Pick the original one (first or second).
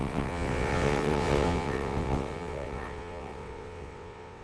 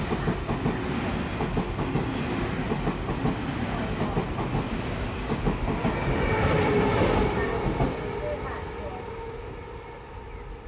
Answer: second